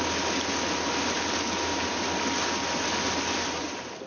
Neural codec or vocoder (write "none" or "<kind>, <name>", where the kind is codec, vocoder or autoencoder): none